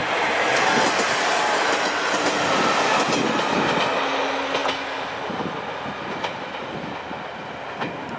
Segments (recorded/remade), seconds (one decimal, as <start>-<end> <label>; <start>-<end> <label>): 0.0-8.2 recorded